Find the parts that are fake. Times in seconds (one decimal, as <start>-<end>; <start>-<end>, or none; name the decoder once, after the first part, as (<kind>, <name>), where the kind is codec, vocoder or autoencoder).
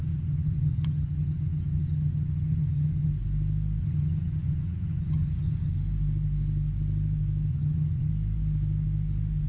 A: 0.0-3.1 (vocoder, HiFi-GAN); 3.8-5.7; 7.5-8.1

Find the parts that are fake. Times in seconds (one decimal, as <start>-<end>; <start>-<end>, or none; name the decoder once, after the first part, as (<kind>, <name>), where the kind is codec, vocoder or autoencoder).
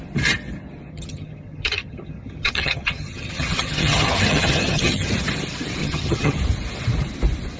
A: 0.9-5.1 (vocoder, HiFi-GAN); 5.8-6.4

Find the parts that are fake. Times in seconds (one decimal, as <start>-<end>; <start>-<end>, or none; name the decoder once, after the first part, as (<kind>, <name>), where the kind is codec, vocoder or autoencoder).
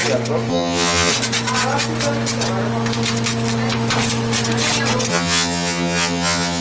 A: 0.5-1.1 (vocoder, HiFi-GAN); 5.1-6.6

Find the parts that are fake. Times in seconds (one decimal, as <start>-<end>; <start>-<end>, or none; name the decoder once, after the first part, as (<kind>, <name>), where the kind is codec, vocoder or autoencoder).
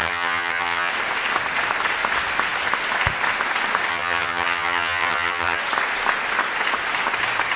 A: 0.0-0.9 (vocoder, HiFi-GAN); 3.9-5.6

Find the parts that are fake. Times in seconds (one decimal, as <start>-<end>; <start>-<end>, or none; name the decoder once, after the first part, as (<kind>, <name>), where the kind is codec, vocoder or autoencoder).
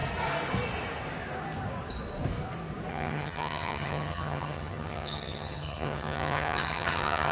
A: 2.9-7.3 (vocoder, HiFi-GAN)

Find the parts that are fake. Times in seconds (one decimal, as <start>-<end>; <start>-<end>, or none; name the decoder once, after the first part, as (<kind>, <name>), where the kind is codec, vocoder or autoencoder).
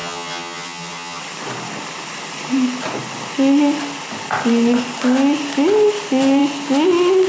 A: 0.0-1.2 (vocoder, HiFi-GAN)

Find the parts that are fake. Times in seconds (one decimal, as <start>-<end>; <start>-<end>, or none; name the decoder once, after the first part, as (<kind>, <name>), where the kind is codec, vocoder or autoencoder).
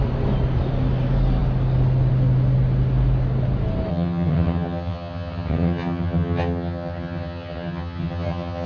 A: 3.9-8.7 (vocoder, HiFi-GAN)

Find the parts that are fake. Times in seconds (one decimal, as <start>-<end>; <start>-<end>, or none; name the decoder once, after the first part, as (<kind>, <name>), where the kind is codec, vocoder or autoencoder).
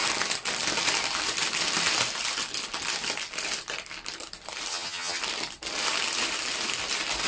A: 4.7-5.2 (vocoder, HiFi-GAN)